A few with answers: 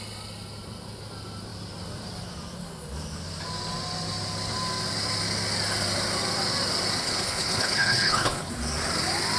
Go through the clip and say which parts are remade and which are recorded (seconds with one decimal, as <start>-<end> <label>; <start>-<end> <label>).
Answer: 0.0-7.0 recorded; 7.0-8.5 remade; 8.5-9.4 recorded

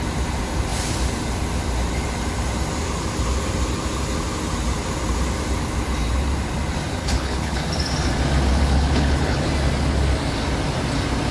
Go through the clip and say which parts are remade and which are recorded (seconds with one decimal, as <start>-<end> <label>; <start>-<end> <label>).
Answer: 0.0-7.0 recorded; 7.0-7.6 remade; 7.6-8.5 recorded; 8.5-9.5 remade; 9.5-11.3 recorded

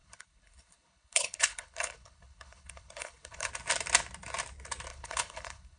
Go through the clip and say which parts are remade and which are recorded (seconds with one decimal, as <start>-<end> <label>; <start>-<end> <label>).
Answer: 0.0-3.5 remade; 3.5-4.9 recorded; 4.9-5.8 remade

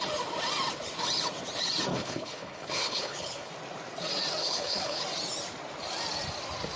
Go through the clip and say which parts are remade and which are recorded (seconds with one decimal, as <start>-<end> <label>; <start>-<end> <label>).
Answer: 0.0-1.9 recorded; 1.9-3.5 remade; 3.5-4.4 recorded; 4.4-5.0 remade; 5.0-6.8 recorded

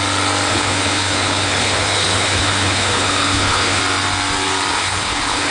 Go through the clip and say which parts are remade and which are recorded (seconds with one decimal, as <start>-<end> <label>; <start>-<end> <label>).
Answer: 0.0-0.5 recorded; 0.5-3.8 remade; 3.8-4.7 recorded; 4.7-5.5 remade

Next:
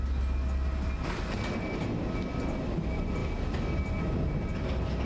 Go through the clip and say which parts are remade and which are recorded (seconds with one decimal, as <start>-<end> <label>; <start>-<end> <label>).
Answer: 0.0-5.1 recorded

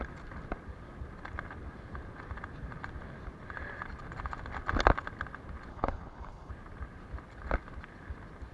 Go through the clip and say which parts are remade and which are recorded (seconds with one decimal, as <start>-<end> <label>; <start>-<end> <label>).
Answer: 0.0-5.7 recorded; 5.7-6.5 remade; 6.5-8.5 recorded

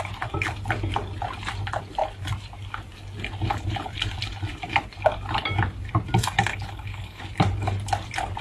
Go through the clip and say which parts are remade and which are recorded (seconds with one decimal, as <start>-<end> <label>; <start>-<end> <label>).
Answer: 0.0-6.5 recorded; 6.5-7.2 remade; 7.2-8.4 recorded